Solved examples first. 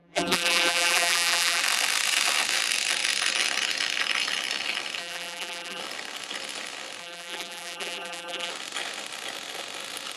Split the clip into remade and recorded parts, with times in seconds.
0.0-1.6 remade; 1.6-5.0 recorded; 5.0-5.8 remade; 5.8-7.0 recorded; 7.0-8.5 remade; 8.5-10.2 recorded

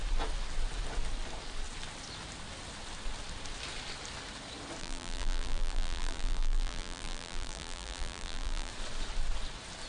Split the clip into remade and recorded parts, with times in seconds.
0.0-4.8 recorded; 4.8-8.7 remade; 8.7-9.9 recorded